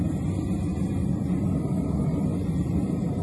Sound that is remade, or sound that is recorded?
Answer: recorded